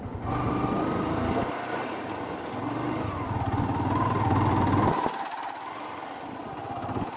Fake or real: real